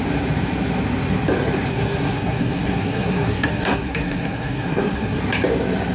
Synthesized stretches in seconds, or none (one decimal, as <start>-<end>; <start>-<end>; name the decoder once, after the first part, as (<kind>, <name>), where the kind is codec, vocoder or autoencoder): 1.7-5.2 (codec, SNAC)